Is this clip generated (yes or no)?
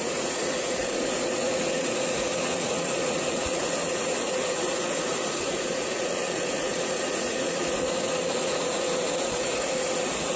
yes